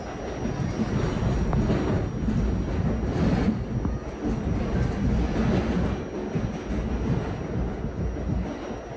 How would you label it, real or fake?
real